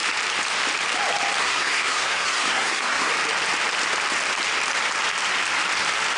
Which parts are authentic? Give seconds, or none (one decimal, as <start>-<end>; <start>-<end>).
0.0-1.4; 3.1-6.2